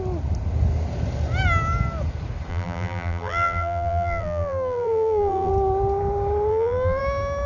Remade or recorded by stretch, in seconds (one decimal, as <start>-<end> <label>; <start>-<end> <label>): 0.0-2.5 recorded; 2.5-5.5 remade; 5.5-6.5 recorded; 6.5-7.0 remade; 7.0-7.5 recorded